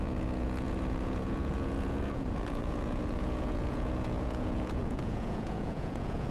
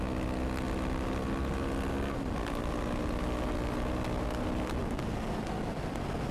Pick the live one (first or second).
second